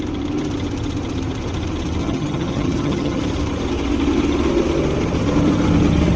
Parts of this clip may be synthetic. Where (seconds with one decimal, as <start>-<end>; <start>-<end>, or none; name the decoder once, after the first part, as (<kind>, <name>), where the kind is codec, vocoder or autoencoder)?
2.0-3.2 (vocoder, HiFi-GAN)